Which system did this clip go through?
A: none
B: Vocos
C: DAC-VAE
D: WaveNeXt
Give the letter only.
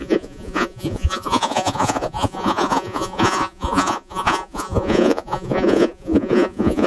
B